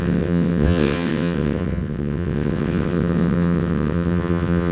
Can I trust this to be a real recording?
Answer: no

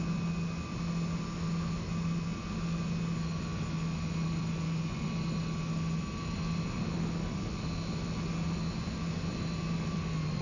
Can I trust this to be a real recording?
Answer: yes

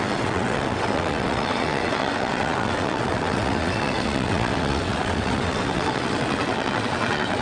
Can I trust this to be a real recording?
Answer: no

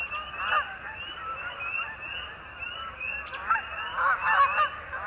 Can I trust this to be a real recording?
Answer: yes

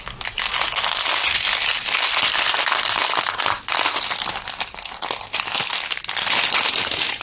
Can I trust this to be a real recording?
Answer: yes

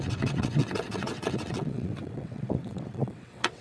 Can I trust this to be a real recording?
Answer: no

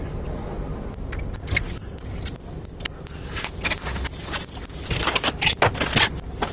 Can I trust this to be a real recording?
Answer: yes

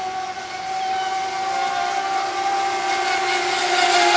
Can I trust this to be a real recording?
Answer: yes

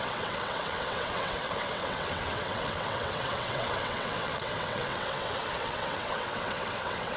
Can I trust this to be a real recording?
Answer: no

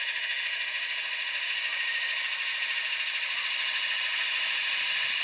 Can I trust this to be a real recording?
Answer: yes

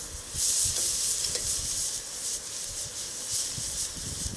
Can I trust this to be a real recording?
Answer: yes